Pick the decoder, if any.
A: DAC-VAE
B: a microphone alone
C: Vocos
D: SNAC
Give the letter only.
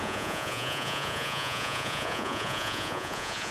C